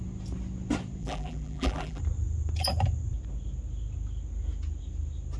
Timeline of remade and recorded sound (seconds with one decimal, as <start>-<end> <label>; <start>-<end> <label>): 0.0-1.0 recorded; 1.0-2.0 remade; 2.0-5.4 recorded